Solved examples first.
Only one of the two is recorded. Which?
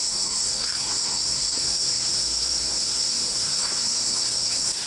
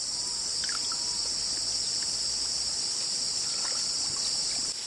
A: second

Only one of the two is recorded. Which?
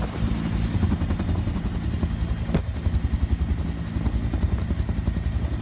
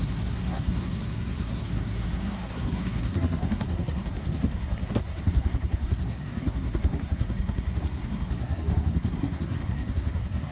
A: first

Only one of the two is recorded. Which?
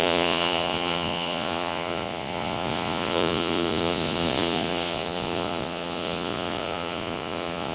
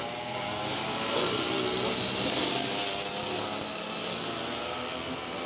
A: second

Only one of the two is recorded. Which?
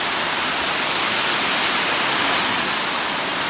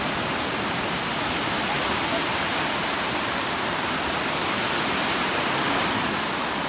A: first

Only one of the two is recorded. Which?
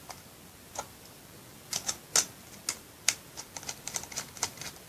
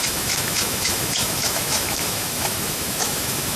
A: first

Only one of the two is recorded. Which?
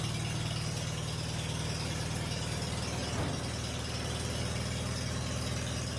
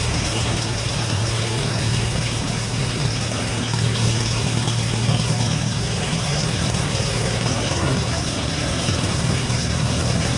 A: first